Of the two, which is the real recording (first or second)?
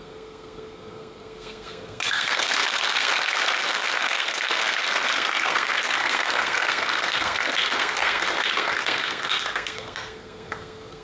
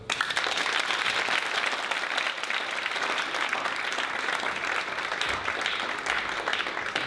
second